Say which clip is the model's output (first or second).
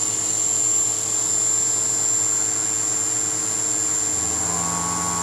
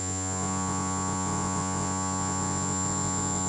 second